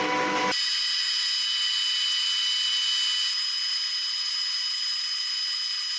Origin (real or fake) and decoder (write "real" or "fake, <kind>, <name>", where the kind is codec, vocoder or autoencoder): real